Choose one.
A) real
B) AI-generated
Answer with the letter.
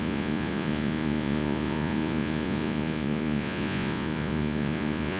B